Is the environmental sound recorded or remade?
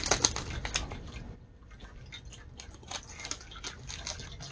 recorded